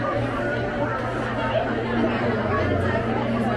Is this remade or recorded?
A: recorded